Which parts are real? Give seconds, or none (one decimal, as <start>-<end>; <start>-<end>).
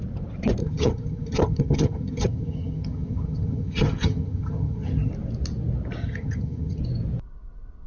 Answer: 0.0-0.6; 5.1-6.0; 6.8-7.9